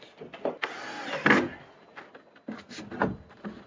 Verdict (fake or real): real